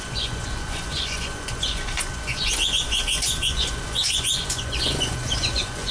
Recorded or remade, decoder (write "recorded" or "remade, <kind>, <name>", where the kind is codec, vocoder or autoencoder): remade, vocoder, Vocos